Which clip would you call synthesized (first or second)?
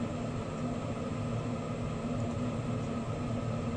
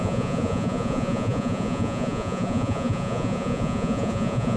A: second